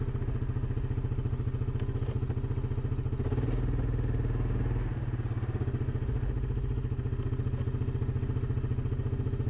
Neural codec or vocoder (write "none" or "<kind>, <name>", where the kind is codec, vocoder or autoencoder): none